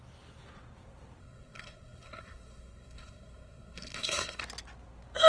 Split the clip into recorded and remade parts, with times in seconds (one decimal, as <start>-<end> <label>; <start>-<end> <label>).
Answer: 0.0-1.2 recorded; 1.2-4.4 remade; 4.4-5.3 recorded